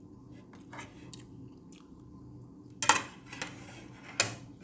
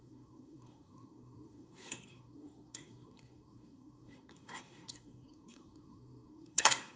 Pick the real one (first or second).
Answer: first